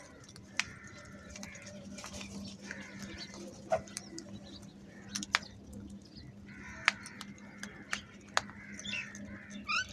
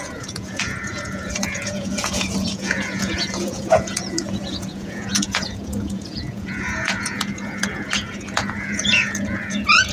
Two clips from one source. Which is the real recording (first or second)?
first